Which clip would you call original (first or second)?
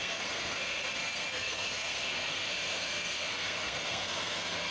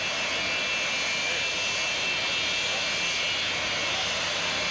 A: second